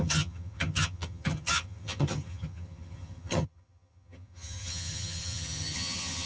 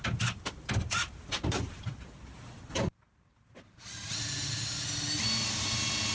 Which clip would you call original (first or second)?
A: second